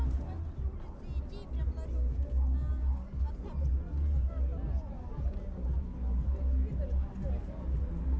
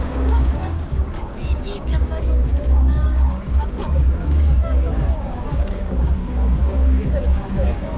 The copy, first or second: second